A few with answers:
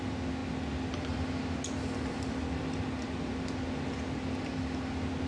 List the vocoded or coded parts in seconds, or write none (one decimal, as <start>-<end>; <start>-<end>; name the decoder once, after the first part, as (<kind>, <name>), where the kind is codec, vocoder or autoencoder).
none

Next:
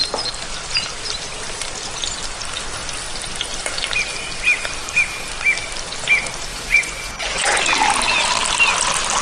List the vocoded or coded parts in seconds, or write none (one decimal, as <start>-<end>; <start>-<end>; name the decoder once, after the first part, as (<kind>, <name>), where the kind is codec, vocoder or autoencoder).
6.5-7.6 (vocoder, Vocos)

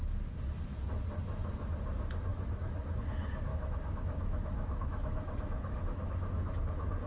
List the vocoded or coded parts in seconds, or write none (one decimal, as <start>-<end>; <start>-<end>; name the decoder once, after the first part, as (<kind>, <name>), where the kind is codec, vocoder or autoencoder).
2.3-3.0 (autoencoder, DAC-VAE); 3.5-6.6